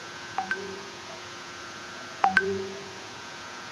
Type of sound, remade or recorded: remade